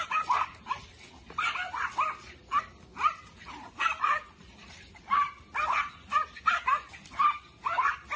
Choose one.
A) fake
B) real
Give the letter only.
B